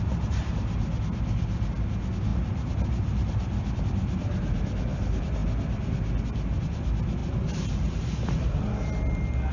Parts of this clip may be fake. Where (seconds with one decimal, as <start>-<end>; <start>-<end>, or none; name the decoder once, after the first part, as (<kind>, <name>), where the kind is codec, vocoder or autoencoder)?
2.3-3.8 (vocoder, BigVGAN v2); 7.2-8.4